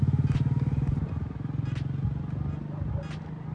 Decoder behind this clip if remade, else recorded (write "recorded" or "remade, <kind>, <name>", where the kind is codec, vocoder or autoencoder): recorded